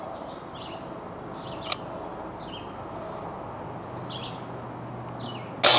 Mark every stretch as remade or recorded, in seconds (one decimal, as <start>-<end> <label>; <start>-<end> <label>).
0.0-5.8 recorded